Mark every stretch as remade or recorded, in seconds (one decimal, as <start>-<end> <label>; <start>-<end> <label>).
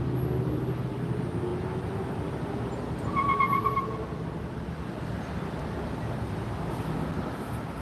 0.0-7.8 recorded